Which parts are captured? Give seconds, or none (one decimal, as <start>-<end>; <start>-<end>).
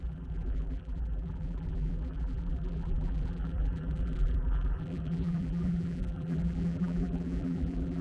none